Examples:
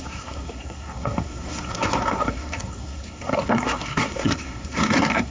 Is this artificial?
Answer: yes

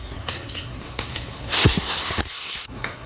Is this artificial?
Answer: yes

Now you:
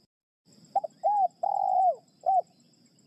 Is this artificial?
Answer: no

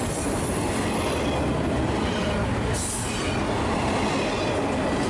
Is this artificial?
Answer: no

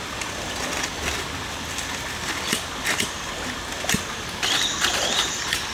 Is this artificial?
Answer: no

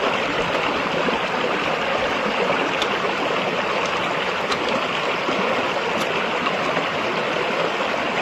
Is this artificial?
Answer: no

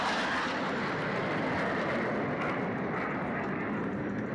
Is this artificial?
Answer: no